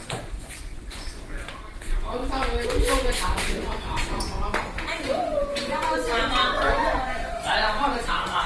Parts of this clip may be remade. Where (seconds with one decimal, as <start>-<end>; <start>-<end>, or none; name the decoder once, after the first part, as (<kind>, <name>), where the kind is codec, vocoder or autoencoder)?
0.0-2.2 (vocoder, Vocos); 3.7-8.5